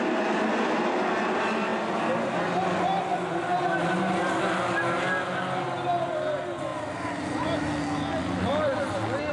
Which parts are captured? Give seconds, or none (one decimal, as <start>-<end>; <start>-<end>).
0.0-9.3